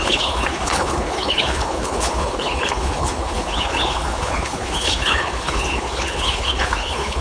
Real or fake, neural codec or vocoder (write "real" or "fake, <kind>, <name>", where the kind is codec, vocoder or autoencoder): fake, codec, HILCodec